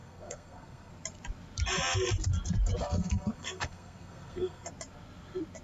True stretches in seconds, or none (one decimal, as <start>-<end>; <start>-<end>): 0.9-2.8; 4.7-5.6